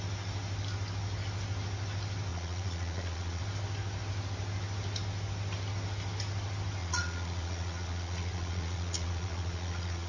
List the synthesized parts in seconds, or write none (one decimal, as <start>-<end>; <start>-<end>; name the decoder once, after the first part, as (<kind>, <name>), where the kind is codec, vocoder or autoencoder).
2.3-3.4 (vocoder, Vocos); 6.8-10.1